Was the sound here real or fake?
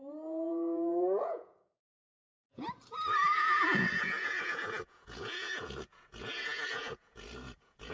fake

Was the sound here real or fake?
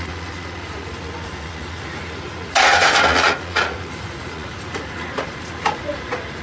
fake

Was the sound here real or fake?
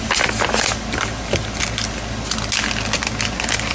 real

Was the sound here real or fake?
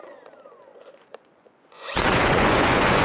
fake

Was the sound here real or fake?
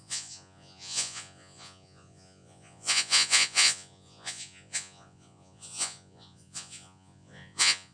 fake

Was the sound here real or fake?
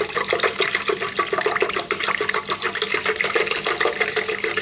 real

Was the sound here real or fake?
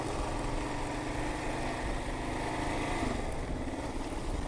real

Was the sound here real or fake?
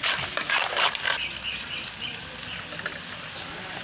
real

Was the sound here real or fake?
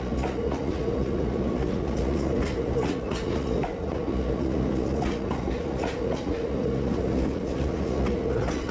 fake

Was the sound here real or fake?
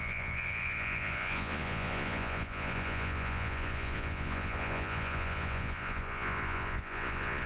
fake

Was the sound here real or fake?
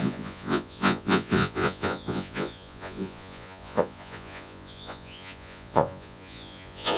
fake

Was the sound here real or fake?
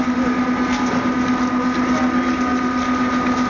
real